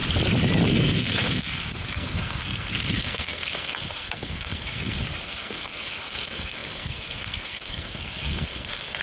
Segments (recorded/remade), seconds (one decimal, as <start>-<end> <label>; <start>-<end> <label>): 0.0-0.7 recorded; 0.7-9.0 remade